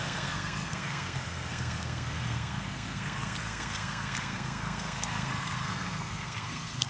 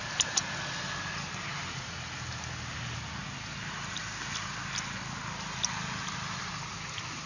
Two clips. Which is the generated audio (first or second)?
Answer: first